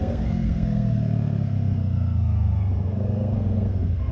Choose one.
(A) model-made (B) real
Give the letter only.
A